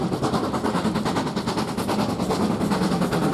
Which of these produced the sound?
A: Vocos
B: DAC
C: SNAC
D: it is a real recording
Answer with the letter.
D